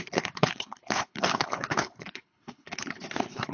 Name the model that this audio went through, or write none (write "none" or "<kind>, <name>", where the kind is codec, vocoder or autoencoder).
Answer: codec, HILCodec